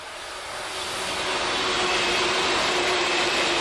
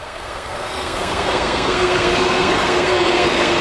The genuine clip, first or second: first